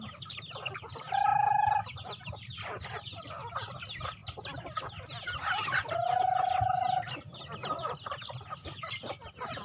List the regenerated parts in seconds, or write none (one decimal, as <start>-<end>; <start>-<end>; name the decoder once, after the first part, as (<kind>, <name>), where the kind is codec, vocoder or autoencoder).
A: none